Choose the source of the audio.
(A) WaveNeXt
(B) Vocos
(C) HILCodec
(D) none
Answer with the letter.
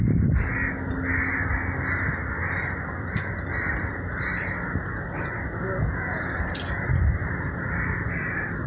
D